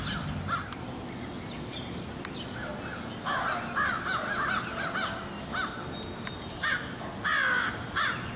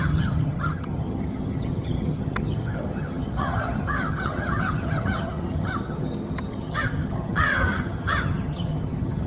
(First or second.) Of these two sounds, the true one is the first